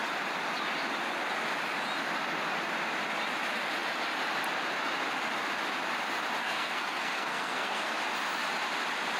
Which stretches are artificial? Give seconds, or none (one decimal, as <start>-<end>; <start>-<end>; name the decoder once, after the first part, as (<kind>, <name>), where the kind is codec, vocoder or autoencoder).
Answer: 6.4-8.0 (codec, SNAC)